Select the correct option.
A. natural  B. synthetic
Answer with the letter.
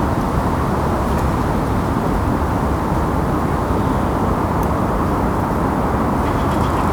A